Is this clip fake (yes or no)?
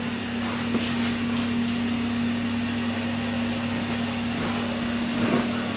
no